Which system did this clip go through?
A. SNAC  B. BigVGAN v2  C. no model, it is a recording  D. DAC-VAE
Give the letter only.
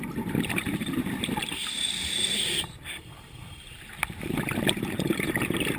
B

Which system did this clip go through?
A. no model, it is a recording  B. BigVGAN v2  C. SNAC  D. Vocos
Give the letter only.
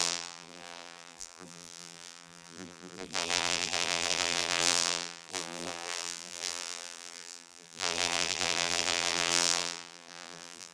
B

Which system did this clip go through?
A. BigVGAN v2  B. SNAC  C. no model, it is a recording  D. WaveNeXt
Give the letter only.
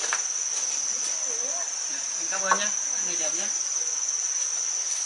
C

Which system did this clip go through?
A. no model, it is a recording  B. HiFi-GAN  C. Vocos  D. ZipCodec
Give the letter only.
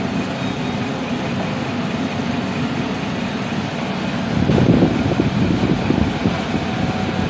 A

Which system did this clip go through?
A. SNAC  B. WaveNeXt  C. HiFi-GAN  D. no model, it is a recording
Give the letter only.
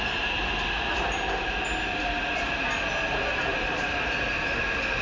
D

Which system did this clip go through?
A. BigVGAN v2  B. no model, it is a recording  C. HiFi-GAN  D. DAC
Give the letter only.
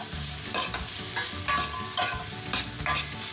B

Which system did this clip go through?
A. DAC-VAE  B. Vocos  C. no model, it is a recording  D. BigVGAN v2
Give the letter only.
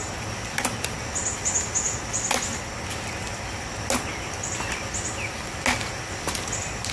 C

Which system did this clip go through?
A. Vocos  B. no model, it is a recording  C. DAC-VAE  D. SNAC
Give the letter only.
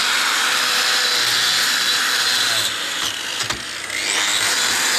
B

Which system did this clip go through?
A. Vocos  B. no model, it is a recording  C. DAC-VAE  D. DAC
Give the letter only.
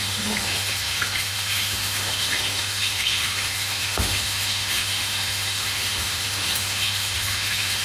C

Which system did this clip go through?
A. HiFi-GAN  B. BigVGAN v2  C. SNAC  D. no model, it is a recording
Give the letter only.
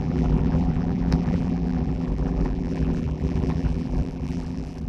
B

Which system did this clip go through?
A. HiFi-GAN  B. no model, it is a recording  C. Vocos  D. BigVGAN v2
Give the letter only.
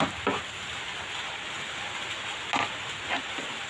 B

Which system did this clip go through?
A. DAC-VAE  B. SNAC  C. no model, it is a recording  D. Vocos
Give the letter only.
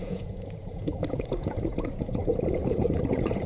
D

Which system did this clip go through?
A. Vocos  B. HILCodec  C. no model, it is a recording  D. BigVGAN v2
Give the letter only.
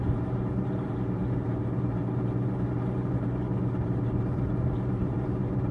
D